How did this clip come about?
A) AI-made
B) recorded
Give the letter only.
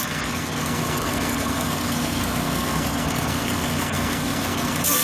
A